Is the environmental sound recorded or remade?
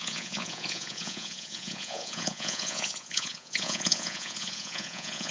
remade